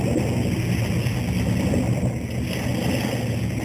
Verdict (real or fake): real